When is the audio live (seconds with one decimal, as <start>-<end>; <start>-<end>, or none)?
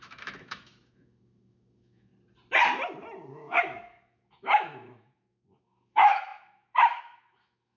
2.1-3.3